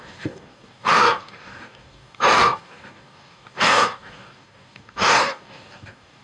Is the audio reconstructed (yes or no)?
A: yes